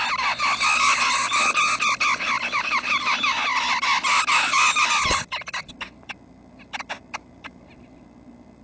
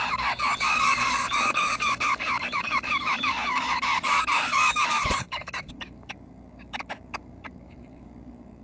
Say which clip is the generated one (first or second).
second